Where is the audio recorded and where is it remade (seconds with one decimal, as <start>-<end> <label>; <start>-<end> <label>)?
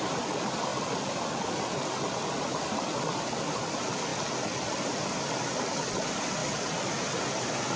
0.0-7.8 recorded